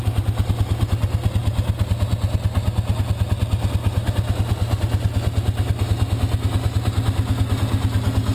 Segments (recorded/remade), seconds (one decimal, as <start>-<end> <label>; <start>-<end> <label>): 0.0-8.3 recorded